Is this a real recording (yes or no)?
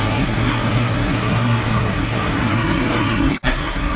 no